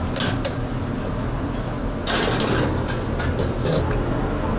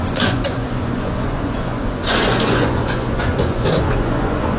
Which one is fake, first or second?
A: second